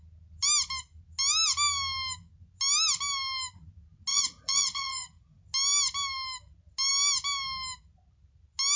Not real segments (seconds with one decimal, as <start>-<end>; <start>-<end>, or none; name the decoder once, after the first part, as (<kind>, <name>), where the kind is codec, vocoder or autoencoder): 4.1-5.4 (vocoder, Vocos)